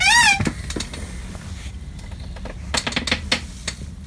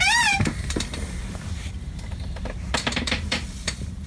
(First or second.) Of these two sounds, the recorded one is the first